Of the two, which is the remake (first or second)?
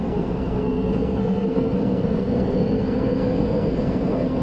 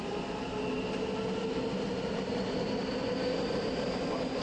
first